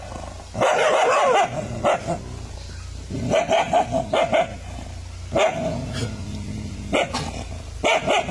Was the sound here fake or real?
real